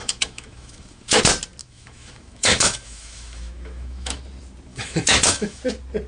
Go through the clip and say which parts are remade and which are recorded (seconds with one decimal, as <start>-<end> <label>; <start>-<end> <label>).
0.0-1.2 remade; 1.2-1.6 recorded; 1.6-4.2 remade; 4.2-4.7 recorded; 4.7-5.6 remade; 5.6-6.1 recorded